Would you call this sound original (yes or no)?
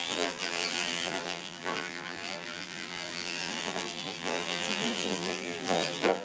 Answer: no